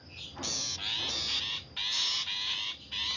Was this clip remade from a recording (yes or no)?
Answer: no